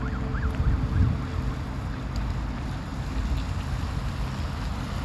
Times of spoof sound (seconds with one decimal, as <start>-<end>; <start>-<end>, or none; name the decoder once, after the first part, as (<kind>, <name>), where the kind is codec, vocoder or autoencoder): none